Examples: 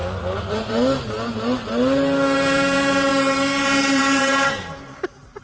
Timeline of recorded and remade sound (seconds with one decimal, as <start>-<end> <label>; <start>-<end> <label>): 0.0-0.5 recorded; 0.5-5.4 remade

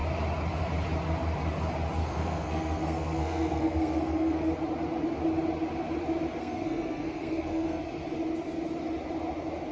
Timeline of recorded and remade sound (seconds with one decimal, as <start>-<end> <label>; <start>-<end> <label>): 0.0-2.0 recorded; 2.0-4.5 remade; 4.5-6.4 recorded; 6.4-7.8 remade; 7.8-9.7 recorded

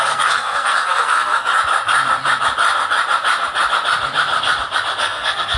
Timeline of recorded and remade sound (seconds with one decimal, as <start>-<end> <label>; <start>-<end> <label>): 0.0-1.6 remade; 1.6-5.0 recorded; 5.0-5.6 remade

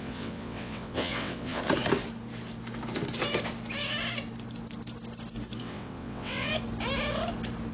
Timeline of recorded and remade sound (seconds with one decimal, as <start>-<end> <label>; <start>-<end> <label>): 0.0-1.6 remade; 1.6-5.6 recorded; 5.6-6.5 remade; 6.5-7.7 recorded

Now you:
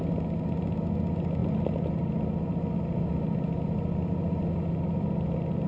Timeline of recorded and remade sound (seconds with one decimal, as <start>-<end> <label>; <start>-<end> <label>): 0.0-5.7 recorded

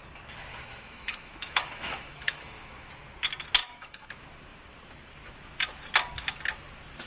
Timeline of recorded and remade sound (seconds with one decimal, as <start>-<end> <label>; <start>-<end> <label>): 0.0-0.5 recorded; 0.5-2.9 remade; 2.9-3.6 recorded; 3.6-4.1 remade; 4.1-7.1 recorded

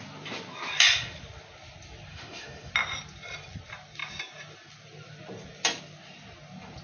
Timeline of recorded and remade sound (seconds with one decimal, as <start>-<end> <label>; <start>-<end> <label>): 0.0-2.1 recorded; 2.1-2.7 remade; 2.7-6.8 recorded